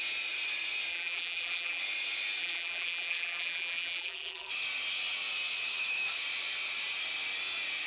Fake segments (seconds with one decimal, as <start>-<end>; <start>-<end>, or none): 0.9-1.8; 2.4-4.5